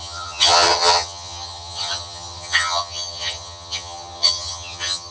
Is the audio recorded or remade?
remade